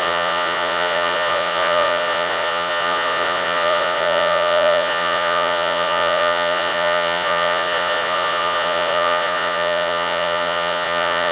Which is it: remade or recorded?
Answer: remade